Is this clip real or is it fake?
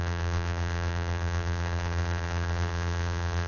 fake